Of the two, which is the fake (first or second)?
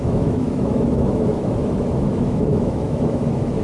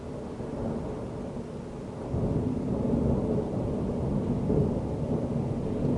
first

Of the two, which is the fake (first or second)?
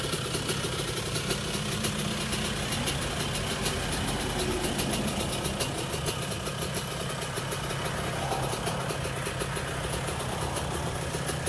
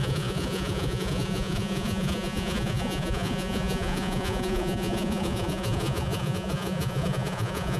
second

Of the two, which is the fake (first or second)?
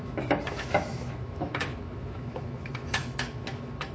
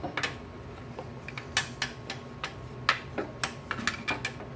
first